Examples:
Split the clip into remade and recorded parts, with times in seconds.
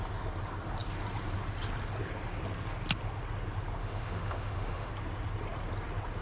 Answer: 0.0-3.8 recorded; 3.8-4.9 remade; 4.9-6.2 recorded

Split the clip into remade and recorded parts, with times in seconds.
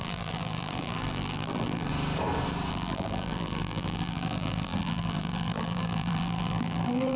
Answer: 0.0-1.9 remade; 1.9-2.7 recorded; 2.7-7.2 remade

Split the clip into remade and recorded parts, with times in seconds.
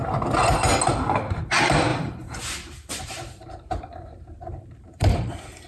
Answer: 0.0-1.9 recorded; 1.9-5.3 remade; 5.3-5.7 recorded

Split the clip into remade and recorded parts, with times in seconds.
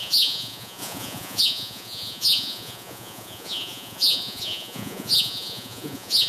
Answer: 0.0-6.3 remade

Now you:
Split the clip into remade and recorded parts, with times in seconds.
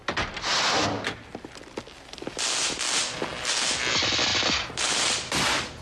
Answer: 0.0-4.3 recorded; 4.3-5.8 remade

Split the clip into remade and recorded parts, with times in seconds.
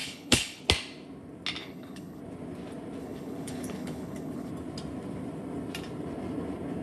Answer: 0.0-0.6 remade; 0.6-1.6 recorded; 1.6-2.2 remade; 2.2-3.0 recorded; 3.0-4.5 remade; 4.5-6.8 recorded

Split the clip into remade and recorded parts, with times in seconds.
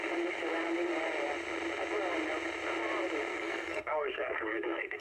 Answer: 0.0-3.3 recorded; 3.3-5.0 remade